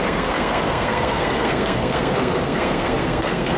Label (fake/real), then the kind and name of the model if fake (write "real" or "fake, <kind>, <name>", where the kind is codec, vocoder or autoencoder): fake, codec, SNAC